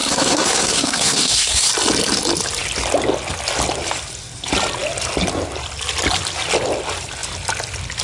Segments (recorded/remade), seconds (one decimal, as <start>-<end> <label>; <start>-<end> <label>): 0.0-1.7 remade; 1.7-8.0 recorded